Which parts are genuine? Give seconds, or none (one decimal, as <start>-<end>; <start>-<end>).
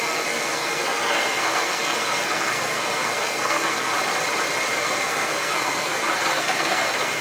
3.9-4.7